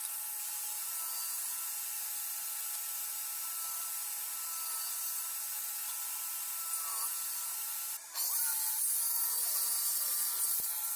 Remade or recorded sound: recorded